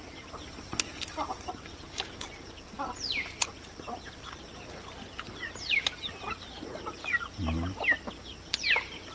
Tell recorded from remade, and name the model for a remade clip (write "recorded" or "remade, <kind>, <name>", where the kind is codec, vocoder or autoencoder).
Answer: recorded